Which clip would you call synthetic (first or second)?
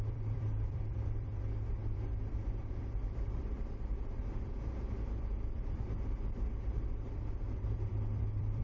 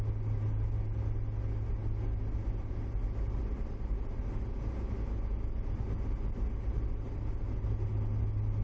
first